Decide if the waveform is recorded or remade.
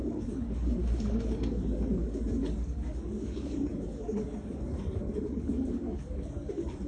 remade